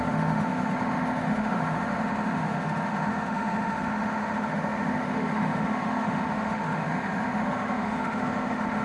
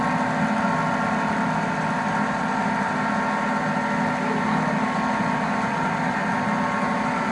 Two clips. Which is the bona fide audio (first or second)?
second